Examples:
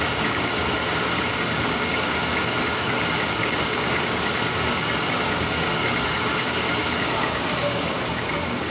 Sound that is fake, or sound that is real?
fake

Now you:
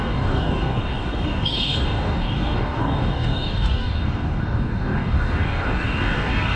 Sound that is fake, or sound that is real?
fake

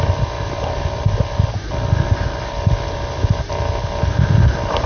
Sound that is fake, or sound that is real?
real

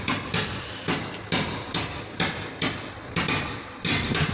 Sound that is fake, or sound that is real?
real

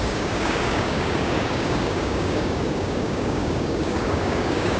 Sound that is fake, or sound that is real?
fake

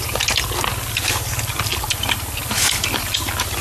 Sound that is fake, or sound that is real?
real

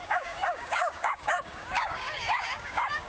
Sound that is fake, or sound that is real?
fake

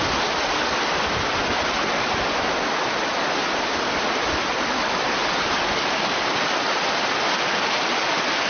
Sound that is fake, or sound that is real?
real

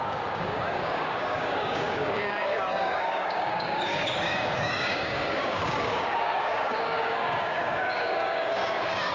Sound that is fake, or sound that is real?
fake